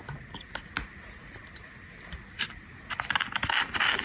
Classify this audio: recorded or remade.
recorded